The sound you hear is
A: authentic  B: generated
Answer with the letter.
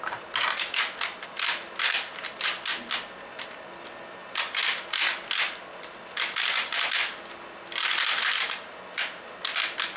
A